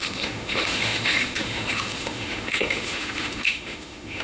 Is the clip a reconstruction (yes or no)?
yes